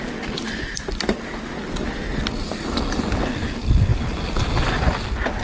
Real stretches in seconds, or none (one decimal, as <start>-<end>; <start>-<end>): 0.0-5.4